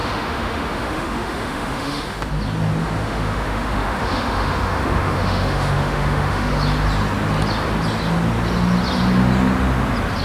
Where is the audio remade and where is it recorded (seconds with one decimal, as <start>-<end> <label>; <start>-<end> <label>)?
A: 0.0-2.3 remade; 2.3-2.8 recorded; 2.8-6.5 remade; 6.5-10.2 recorded